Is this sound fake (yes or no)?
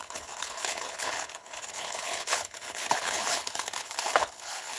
yes